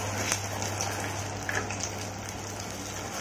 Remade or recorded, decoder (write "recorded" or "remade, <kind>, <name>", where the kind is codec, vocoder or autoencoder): recorded